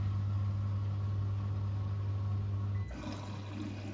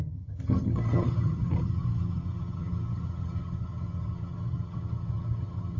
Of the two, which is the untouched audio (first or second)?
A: first